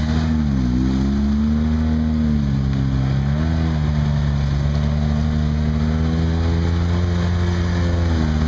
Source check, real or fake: real